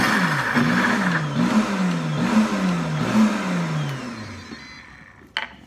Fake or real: real